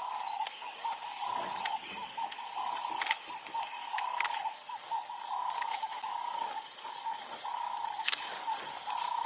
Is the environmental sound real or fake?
fake